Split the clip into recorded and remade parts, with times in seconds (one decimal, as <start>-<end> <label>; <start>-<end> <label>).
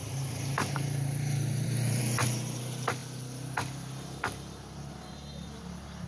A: 0.0-2.0 remade; 2.0-6.1 recorded